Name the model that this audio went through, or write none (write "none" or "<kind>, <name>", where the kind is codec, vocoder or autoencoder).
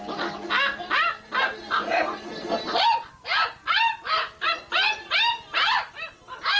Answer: none